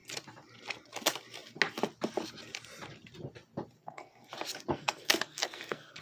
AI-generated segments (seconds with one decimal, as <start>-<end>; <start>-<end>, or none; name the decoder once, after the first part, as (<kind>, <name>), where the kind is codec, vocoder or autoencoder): 3.8-4.3 (codec, SNAC); 4.7-6.0